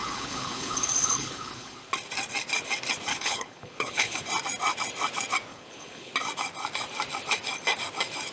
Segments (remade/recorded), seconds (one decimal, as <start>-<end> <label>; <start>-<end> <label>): 0.0-1.9 remade; 1.9-3.1 recorded; 3.1-4.2 remade; 4.2-5.5 recorded; 5.5-6.1 remade; 6.1-8.3 recorded